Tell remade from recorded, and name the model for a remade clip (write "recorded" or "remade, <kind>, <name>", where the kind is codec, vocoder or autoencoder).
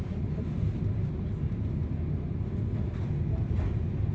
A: recorded